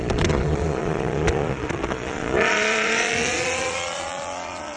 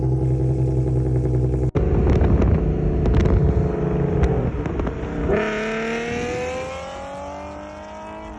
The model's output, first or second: first